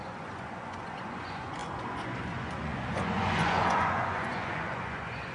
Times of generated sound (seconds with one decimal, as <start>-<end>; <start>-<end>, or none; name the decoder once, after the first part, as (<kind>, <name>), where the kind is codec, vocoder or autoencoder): 0.0-5.3 (vocoder, Vocos)